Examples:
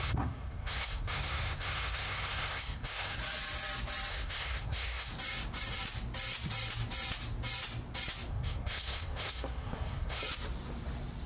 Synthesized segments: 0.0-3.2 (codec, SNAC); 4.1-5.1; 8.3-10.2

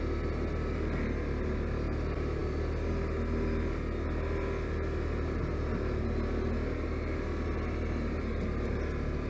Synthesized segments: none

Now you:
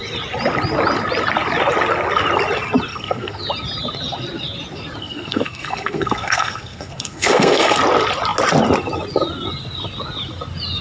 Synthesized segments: 2.9-3.4 (codec, SNAC); 5.0-7.8

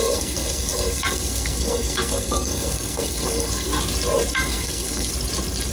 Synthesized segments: 0.0-3.7 (codec, SNAC); 4.3-5.1